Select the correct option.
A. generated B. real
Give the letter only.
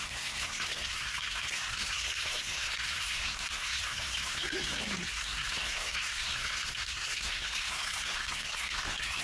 A